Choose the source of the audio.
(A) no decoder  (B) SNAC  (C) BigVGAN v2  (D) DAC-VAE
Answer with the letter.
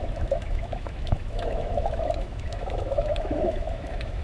D